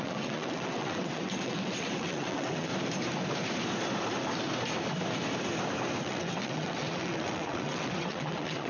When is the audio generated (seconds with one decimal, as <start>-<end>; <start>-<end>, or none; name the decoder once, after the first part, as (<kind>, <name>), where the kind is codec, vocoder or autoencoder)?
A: 0.0-2.7 (vocoder, WaveNeXt); 6.0-8.7